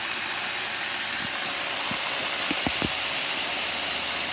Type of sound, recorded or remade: recorded